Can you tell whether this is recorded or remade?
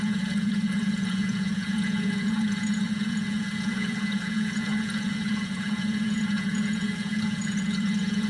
remade